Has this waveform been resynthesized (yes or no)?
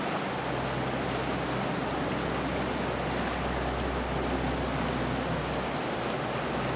no